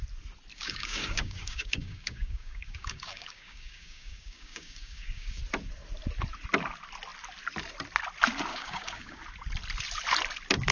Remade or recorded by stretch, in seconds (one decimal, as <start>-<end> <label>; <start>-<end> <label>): 0.0-0.5 recorded; 0.5-5.4 remade; 5.4-8.5 recorded; 8.5-9.2 remade; 9.2-10.7 recorded